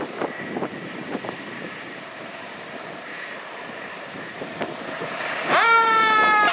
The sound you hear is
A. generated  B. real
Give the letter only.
A